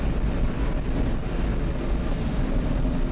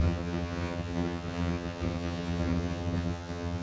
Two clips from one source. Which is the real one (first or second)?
first